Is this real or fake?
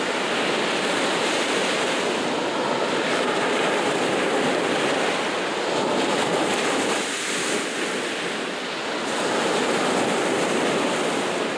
real